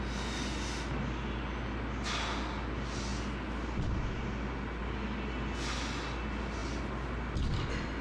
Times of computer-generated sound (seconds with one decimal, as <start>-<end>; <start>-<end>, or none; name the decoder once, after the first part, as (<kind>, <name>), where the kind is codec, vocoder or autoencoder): none